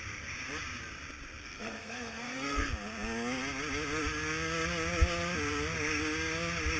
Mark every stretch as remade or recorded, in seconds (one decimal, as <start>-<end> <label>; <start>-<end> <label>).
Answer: 0.0-1.4 recorded; 1.4-2.7 remade; 2.7-6.8 recorded